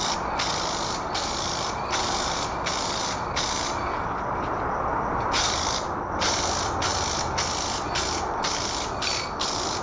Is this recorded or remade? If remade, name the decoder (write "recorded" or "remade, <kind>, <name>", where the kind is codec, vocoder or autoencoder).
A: recorded